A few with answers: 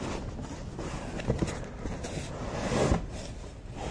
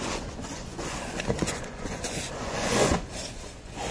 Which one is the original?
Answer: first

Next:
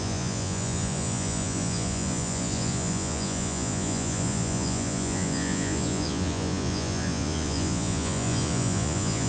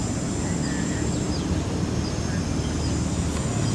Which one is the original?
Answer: second